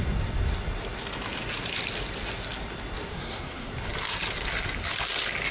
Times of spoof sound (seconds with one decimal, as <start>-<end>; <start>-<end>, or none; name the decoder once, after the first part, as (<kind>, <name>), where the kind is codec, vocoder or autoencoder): 3.1-3.7 (codec, SNAC)